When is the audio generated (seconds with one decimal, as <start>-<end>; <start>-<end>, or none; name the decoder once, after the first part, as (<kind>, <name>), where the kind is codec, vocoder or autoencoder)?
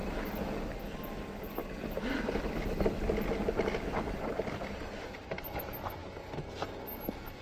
none